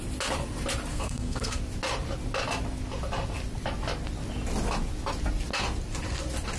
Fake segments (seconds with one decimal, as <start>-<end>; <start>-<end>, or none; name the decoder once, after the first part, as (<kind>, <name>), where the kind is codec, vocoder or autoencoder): 0.9-1.6 (codec, SNAC)